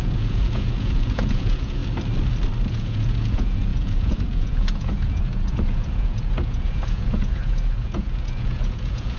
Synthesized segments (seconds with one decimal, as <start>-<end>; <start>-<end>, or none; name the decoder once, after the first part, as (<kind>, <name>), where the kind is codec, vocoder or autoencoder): 0.0-1.8 (vocoder, Vocos); 2.7-9.2